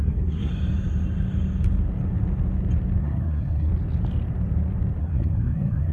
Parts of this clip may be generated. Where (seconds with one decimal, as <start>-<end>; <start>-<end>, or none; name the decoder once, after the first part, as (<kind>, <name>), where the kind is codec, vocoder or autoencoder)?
0.0-0.5 (codec, SNAC); 3.0-3.7; 5.0-5.9